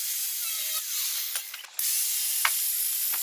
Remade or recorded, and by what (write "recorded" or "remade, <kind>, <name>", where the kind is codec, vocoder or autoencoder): recorded